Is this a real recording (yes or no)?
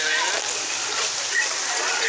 yes